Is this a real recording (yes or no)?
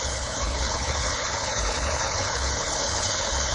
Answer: no